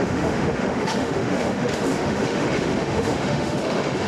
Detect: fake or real fake